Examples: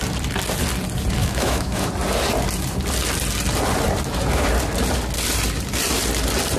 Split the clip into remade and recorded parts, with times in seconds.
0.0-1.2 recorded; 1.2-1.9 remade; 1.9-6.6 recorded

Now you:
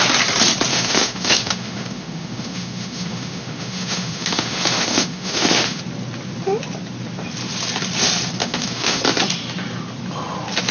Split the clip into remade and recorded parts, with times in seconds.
0.0-0.7 recorded; 0.7-5.8 remade; 5.8-8.4 recorded; 8.4-9.0 remade; 9.0-10.7 recorded

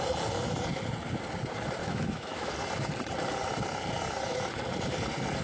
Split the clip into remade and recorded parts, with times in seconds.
0.0-1.8 recorded; 1.8-2.5 remade; 2.5-5.4 recorded

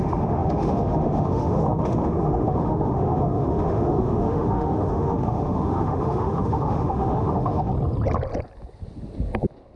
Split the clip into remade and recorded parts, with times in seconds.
0.0-7.7 remade; 7.7-9.8 recorded

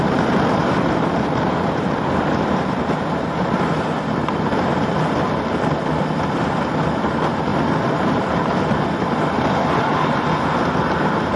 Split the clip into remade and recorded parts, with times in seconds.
0.0-11.4 recorded

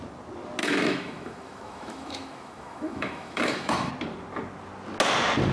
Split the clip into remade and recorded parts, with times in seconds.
0.0-0.6 recorded; 0.6-3.9 remade; 3.9-5.5 recorded

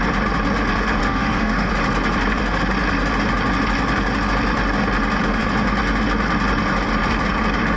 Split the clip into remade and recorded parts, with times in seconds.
0.0-1.0 recorded; 1.0-1.7 remade; 1.7-7.8 recorded

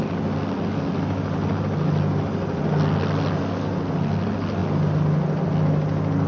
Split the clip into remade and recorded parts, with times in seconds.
0.0-6.3 recorded